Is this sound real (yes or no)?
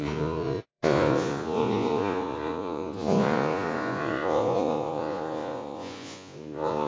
no